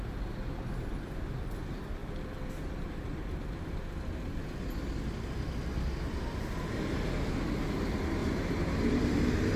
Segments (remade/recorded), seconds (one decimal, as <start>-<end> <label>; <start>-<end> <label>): 0.0-8.2 recorded; 8.2-9.2 remade; 9.2-9.6 recorded